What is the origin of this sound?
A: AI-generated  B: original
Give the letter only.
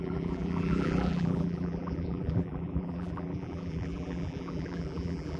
A